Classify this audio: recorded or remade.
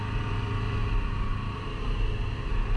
recorded